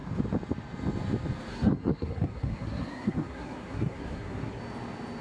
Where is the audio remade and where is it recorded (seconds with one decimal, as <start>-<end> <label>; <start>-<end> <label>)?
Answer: 0.0-1.5 recorded; 1.5-4.6 remade; 4.6-5.2 recorded

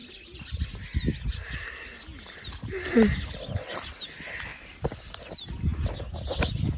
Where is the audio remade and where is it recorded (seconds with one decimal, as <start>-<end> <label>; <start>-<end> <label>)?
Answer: 0.0-6.8 recorded